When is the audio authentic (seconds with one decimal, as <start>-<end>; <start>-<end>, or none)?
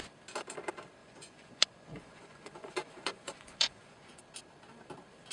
0.0-1.0; 4.2-5.3